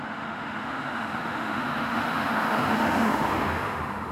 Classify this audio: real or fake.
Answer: fake